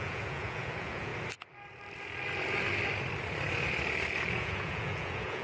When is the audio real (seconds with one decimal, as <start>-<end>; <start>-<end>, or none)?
1.1-4.3